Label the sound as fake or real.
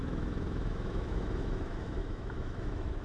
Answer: fake